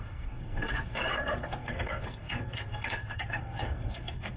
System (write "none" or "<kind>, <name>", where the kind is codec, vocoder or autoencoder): codec, SNAC